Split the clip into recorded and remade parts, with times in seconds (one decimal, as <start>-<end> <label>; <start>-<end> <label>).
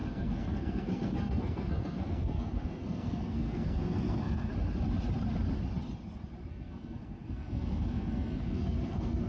0.0-4.5 remade; 4.5-6.5 recorded; 6.5-9.3 remade